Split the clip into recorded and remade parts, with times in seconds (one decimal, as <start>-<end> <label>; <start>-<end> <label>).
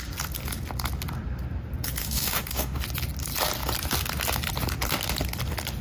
0.0-2.0 recorded; 2.0-2.8 remade; 2.8-5.8 recorded